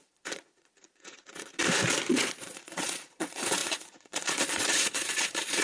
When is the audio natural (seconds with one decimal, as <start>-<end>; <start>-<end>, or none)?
1.5-2.1